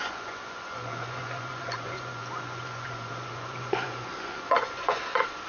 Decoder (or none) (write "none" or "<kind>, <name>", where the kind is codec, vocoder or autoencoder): vocoder, Vocos